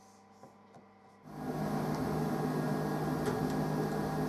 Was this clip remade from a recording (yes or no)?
no